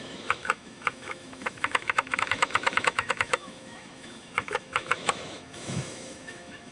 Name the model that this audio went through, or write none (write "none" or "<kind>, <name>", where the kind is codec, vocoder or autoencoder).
autoencoder, DAC-VAE